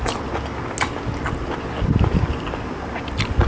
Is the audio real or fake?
real